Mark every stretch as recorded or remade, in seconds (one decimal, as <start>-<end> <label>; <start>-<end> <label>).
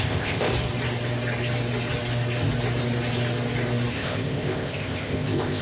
0.0-0.5 remade; 0.5-3.9 recorded; 3.9-5.6 remade